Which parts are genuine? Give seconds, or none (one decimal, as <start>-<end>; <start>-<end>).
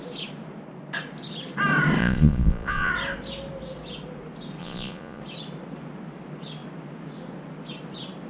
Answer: 0.0-2.0; 2.9-4.6; 5.2-8.3